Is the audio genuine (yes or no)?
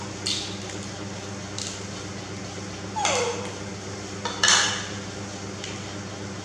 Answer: yes